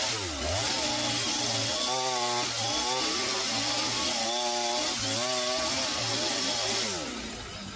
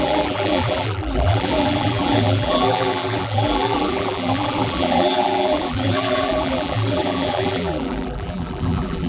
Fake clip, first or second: second